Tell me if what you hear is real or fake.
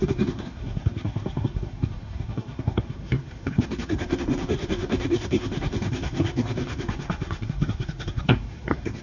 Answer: fake